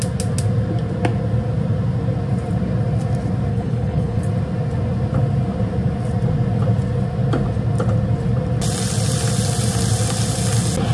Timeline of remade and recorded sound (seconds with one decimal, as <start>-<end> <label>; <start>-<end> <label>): 0.0-3.5 recorded; 3.5-4.2 remade; 4.2-10.9 recorded